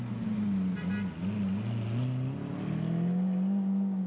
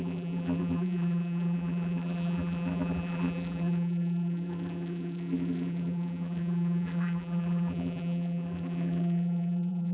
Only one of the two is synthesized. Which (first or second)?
second